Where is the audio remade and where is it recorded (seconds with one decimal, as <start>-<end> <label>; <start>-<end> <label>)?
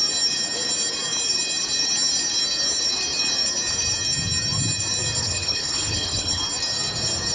0.0-5.2 recorded; 5.2-6.4 remade; 6.4-7.3 recorded